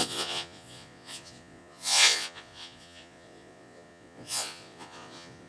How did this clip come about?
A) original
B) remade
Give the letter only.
B